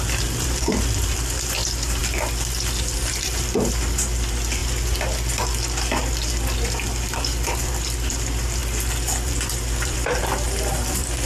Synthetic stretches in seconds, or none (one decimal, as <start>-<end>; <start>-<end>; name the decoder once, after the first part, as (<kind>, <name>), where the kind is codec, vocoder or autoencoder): 0.0-2.0 (vocoder, BigVGAN v2); 3.1-4.6; 7.6-11.3